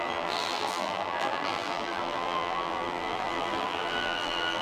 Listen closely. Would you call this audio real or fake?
fake